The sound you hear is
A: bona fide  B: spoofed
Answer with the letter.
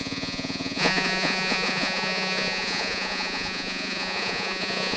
B